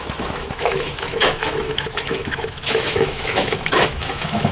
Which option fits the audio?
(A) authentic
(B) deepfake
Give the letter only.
B